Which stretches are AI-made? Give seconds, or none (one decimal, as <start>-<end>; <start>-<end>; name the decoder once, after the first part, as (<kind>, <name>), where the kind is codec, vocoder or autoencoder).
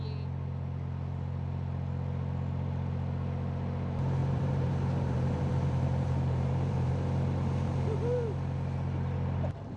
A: 4.2-6.9 (vocoder, BigVGAN v2)